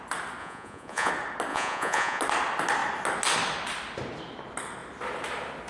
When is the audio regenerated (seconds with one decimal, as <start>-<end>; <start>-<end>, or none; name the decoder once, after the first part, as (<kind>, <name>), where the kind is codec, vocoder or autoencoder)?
0.4-1.1 (vocoder, Vocos); 1.5-2.2